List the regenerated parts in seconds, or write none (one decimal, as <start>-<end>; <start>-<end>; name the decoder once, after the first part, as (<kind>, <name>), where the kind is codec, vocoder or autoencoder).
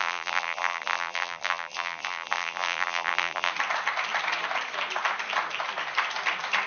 0.0-3.5 (vocoder, BigVGAN v2)